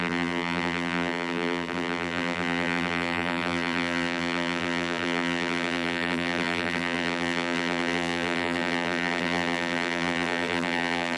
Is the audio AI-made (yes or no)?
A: yes